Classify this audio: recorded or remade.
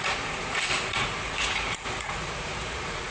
remade